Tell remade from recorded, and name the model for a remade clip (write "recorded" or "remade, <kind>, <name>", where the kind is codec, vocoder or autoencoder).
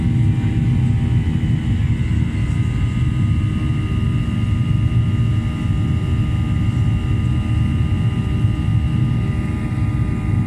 recorded